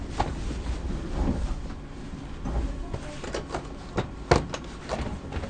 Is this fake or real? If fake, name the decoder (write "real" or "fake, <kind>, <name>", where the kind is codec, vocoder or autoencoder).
real